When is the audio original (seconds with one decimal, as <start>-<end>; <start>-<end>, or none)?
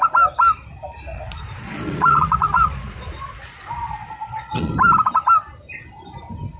0.0-1.1; 4.7-6.6